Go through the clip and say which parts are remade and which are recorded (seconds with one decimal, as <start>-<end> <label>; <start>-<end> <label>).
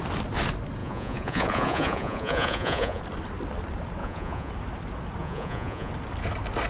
0.0-0.8 recorded; 0.8-3.0 remade; 3.0-4.0 recorded; 4.0-4.5 remade; 4.5-5.2 recorded; 5.2-5.9 remade; 5.9-6.7 recorded